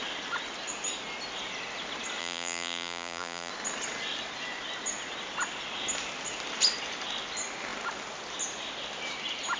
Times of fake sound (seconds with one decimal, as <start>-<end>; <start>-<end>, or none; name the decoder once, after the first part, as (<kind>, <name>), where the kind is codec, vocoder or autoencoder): 2.2-3.5 (vocoder, BigVGAN v2)